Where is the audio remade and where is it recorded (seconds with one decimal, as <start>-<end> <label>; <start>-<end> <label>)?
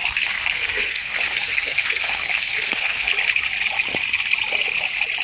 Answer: 0.0-3.1 remade; 3.1-5.2 recorded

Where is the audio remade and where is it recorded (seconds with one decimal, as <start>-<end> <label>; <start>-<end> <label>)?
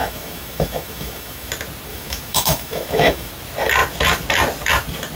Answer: 0.0-1.5 remade; 1.5-1.9 recorded; 1.9-3.3 remade; 3.3-5.2 recorded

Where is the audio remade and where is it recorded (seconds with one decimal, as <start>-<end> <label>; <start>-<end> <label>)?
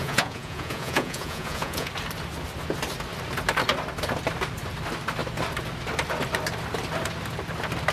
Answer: 0.0-1.9 remade; 1.9-7.9 recorded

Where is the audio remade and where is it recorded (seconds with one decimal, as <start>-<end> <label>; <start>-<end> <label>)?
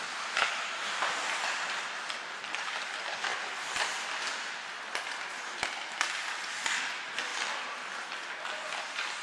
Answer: 0.0-9.2 recorded